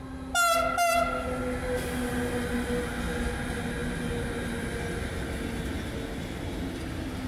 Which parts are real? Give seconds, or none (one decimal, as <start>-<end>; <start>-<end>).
0.0-7.3